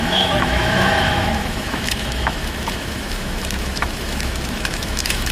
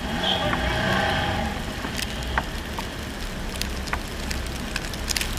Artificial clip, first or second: first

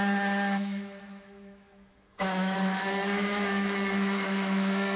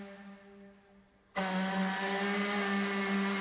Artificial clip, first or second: first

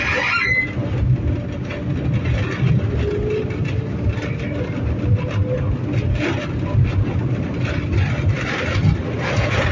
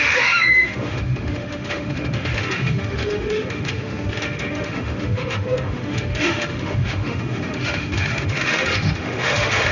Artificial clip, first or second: second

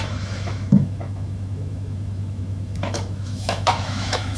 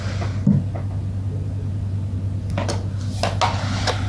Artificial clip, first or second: first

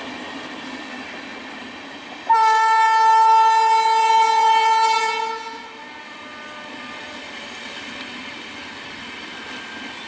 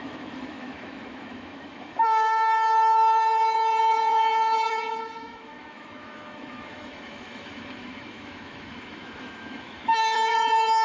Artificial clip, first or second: second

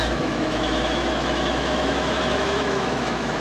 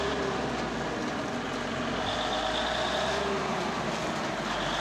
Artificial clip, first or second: first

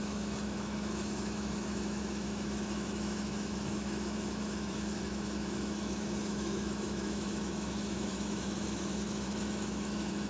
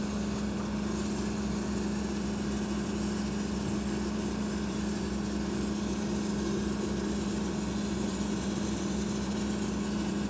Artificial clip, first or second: first